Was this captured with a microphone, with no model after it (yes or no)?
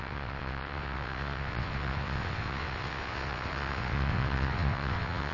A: no